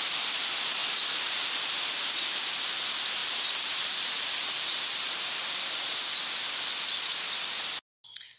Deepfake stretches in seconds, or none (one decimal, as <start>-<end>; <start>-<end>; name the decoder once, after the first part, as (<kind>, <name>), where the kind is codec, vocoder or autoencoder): 0.8-1.6 (vocoder, BigVGAN v2); 3.2-6.0